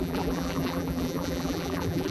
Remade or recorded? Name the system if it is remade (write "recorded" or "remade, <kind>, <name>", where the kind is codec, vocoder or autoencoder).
remade, vocoder, BigVGAN v2